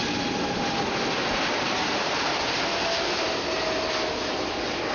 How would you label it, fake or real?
real